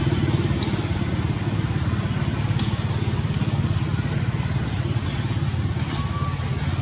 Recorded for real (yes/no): yes